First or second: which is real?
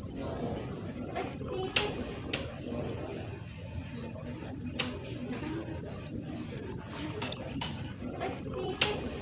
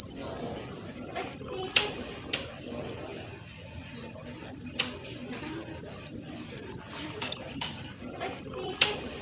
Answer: first